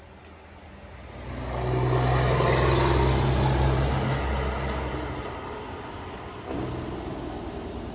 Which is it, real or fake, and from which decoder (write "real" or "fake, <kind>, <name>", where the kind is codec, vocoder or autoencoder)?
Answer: real